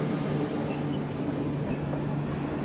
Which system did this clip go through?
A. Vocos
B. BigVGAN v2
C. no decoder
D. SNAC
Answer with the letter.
C